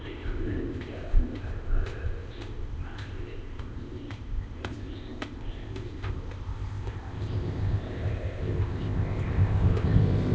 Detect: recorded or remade remade